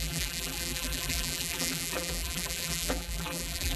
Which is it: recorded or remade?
remade